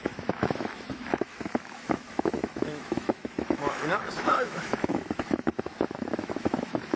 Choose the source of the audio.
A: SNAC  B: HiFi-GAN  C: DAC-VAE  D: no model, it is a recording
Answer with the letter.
C